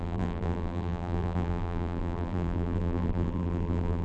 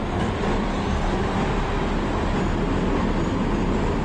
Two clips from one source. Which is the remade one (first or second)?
first